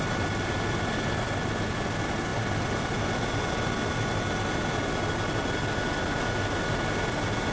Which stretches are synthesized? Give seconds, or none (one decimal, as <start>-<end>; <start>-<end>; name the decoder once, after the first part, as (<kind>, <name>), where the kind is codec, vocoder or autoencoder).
none